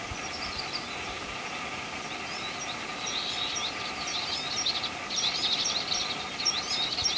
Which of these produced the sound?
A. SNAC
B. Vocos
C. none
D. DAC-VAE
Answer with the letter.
C